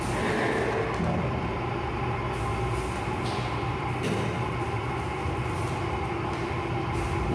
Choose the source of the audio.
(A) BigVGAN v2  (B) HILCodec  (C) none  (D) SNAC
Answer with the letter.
C